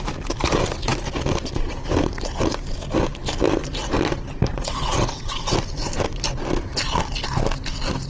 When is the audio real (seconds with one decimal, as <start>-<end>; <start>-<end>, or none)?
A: 0.0-4.5; 5.5-8.1